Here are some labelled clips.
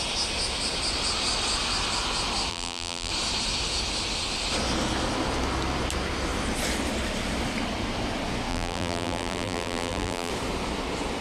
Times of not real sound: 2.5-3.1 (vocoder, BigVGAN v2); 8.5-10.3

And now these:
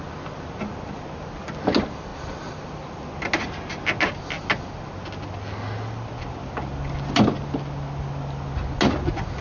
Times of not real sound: none

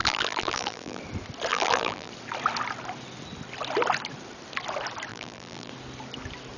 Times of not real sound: 0.0-1.0 (vocoder, BigVGAN v2); 1.5-2.1; 5.1-5.7

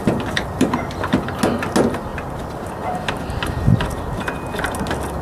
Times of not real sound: none